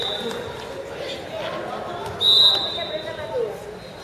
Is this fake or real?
real